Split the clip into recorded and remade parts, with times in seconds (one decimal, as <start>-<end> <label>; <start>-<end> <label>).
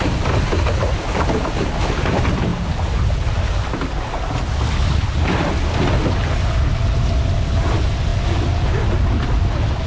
0.0-9.9 recorded